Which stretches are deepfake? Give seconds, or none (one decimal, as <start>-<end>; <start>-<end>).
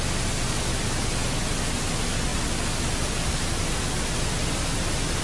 none